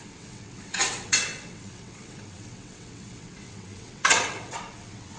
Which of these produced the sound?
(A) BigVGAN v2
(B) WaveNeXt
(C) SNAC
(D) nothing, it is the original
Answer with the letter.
B